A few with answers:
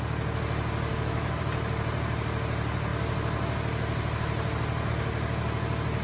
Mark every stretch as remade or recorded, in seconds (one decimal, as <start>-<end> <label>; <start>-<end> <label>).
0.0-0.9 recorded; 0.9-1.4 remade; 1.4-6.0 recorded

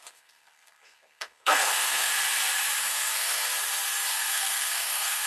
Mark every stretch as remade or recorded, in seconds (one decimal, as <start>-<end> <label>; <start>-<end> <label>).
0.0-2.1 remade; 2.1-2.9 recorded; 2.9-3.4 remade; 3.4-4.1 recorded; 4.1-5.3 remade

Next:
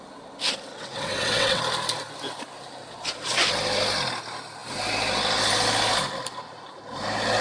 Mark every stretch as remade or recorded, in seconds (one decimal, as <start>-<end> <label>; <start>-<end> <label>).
0.0-0.7 recorded; 0.7-1.6 remade; 1.6-7.4 recorded

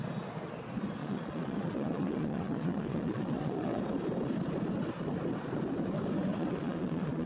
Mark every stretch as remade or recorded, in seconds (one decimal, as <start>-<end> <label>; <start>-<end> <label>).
0.0-1.0 recorded; 1.0-3.8 remade; 3.8-6.3 recorded; 6.3-7.3 remade

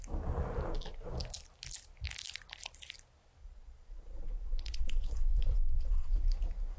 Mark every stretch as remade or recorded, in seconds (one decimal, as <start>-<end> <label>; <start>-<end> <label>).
0.0-3.4 recorded; 3.4-6.1 remade; 6.1-6.8 recorded